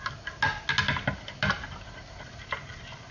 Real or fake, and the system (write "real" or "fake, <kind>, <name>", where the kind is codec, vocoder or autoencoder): real